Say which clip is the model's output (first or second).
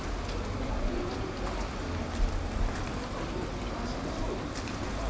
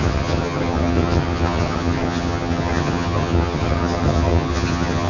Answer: second